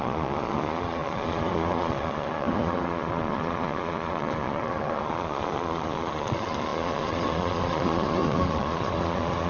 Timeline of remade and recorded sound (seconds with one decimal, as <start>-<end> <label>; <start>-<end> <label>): 0.0-9.5 remade